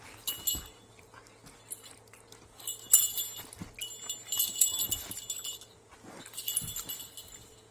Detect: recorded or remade recorded